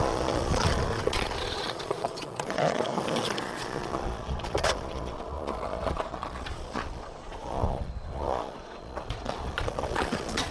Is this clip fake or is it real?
fake